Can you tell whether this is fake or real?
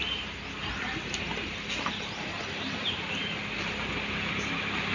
real